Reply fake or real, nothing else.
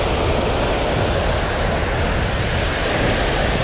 real